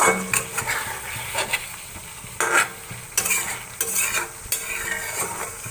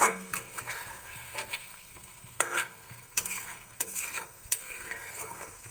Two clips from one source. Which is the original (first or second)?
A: first